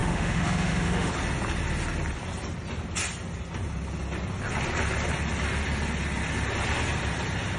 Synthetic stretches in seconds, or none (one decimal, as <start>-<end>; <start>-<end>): 0.0-1.1